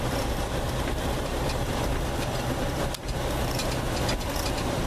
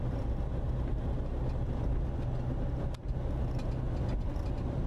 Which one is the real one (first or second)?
second